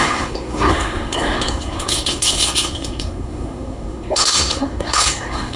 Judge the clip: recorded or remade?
remade